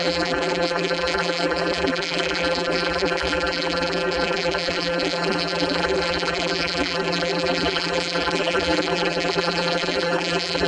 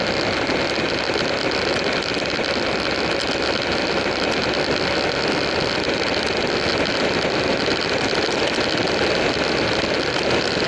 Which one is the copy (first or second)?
first